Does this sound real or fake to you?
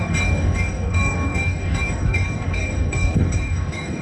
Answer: fake